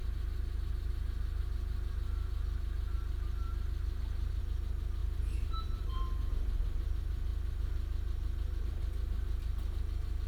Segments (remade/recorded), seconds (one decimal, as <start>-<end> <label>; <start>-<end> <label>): 0.0-5.0 recorded; 5.0-6.3 remade; 6.3-10.3 recorded